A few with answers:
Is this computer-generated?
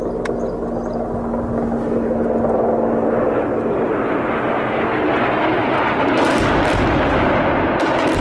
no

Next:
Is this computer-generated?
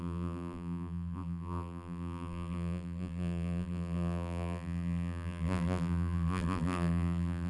yes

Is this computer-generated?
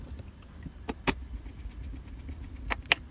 no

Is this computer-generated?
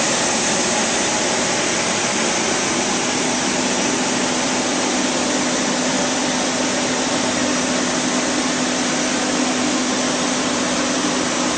no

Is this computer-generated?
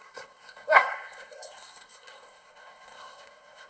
yes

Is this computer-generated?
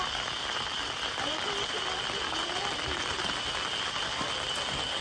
no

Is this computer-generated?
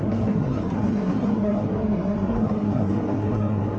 yes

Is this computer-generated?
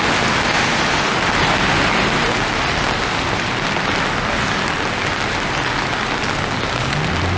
no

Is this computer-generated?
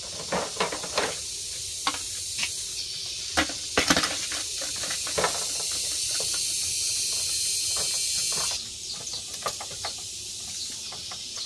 no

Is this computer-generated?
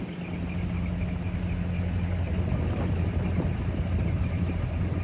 no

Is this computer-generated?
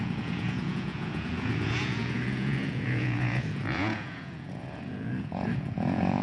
yes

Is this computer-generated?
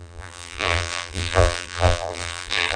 yes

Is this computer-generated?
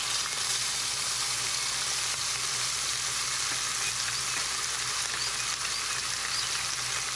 no